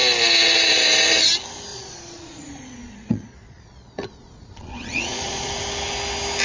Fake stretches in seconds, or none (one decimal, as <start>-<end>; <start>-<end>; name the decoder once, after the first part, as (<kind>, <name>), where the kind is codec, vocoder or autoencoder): 1.7-5.5 (vocoder, Vocos)